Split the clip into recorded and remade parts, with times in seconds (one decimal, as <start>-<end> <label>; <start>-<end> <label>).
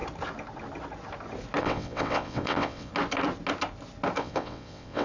0.0-1.6 recorded; 1.6-2.9 remade; 2.9-4.2 recorded; 4.2-5.0 remade